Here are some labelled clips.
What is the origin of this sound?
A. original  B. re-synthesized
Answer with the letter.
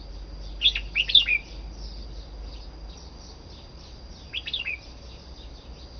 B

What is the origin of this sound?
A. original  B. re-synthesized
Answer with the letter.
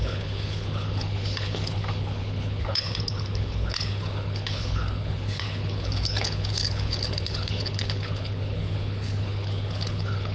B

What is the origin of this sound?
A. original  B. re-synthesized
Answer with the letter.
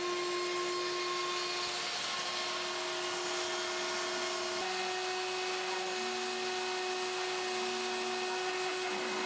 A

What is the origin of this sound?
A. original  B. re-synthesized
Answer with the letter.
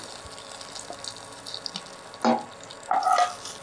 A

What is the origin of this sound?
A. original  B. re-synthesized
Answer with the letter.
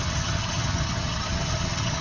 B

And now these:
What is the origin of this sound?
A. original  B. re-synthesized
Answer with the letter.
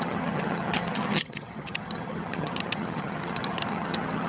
B